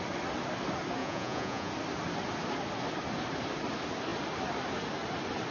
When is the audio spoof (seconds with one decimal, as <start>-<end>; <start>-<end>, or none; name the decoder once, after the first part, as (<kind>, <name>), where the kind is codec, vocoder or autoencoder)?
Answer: 1.0-1.7 (vocoder, Vocos)